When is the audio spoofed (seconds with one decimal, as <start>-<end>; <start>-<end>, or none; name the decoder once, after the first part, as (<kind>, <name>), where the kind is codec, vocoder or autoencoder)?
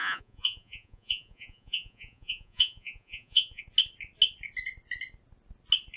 0.0-3.6 (vocoder, Vocos)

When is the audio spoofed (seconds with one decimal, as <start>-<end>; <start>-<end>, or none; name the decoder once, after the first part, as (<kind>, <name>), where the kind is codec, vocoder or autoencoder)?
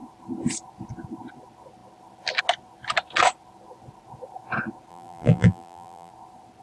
4.9-6.1 (vocoder, BigVGAN v2)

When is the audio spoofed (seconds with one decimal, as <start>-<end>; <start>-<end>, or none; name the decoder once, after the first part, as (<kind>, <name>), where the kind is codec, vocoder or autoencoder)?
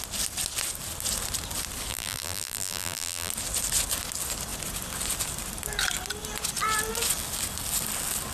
1.9-3.3 (vocoder, BigVGAN v2)